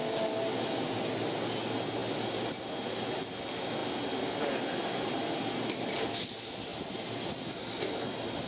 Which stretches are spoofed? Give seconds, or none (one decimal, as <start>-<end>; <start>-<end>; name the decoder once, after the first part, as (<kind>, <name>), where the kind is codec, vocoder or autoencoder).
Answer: 6.7-7.8 (vocoder, BigVGAN v2)